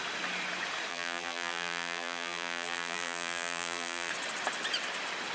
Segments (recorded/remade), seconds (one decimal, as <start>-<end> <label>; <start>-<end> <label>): 0.0-0.9 recorded; 0.9-4.1 remade; 4.1-5.3 recorded